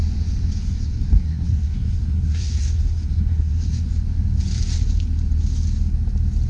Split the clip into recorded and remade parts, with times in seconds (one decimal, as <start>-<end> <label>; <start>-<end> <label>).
0.0-0.6 recorded; 0.6-3.9 remade; 3.9-6.5 recorded